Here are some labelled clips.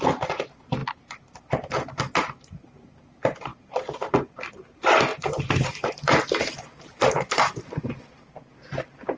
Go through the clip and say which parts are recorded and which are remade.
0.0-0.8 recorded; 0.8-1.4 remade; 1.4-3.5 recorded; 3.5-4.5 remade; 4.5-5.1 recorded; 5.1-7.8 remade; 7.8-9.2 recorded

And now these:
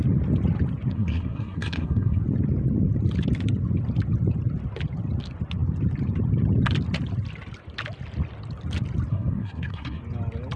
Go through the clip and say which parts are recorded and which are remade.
0.0-0.9 recorded; 0.9-2.2 remade; 2.2-9.1 recorded; 9.1-10.0 remade; 10.0-10.6 recorded

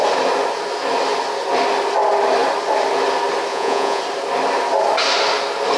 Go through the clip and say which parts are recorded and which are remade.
0.0-3.5 recorded; 3.5-4.0 remade; 4.0-5.8 recorded

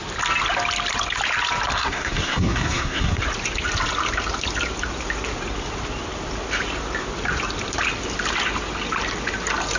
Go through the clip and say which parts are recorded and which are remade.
0.0-1.7 recorded; 1.7-3.2 remade; 3.2-9.8 recorded